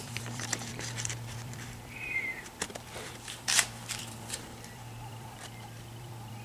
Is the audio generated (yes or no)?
yes